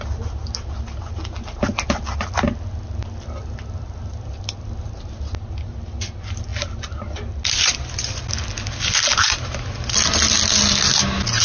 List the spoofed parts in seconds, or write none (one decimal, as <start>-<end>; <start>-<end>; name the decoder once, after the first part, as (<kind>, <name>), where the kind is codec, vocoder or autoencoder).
none